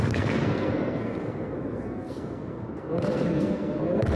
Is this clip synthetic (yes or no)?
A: yes